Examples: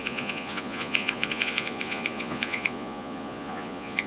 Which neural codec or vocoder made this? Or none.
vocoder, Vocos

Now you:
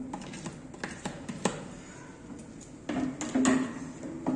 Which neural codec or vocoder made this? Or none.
none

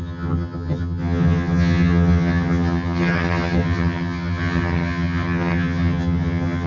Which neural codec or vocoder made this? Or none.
vocoder, HiFi-GAN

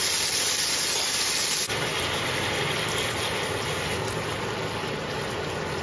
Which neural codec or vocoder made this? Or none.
none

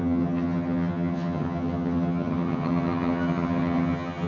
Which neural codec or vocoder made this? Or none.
vocoder, HiFi-GAN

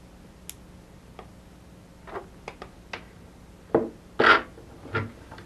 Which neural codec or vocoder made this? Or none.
none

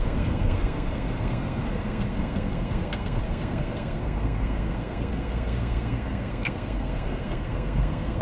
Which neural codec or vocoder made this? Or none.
codec, SNAC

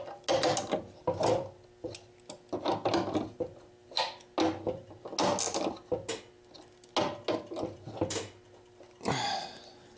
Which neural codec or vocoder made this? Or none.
none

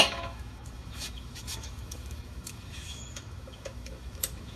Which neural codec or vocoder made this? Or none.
autoencoder, DAC-VAE